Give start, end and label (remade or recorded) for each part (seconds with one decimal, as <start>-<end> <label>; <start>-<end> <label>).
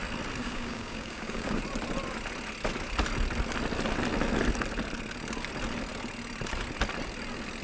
0.0-0.4 recorded; 0.4-1.6 remade; 1.6-7.6 recorded